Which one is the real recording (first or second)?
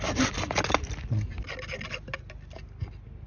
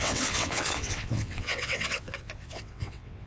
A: first